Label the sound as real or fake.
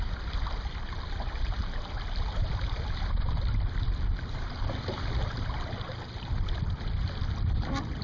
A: real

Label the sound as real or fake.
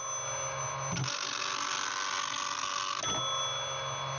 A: real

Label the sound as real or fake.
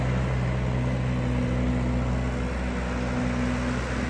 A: real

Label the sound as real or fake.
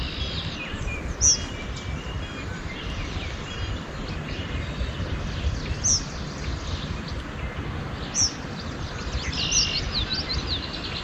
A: real